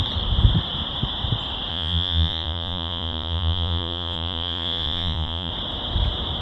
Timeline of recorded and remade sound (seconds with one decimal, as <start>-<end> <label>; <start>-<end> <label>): 0.0-1.7 recorded; 1.7-5.5 remade; 5.5-6.4 recorded